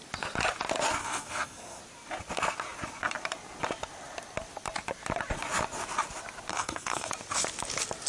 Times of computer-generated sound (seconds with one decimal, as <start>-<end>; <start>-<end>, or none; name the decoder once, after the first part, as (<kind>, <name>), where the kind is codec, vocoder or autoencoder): 1.0-1.8 (codec, SNAC); 6.5-7.1